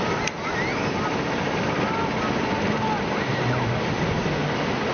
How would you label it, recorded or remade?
recorded